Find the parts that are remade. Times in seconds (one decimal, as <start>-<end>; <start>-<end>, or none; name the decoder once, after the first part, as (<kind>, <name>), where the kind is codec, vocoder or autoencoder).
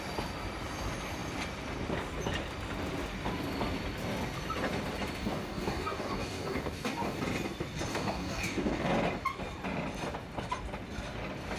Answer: 5.2-7.2 (codec, DAC); 7.9-8.9